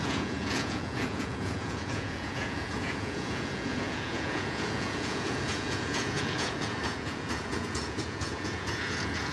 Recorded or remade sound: remade